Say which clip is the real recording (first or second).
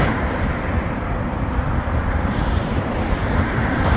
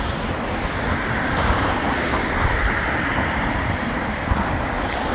second